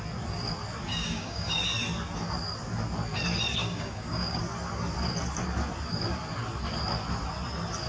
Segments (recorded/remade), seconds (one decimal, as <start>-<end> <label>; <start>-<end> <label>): 0.0-0.9 recorded; 0.9-1.6 remade; 1.6-3.6 recorded; 3.6-4.4 remade; 4.4-7.9 recorded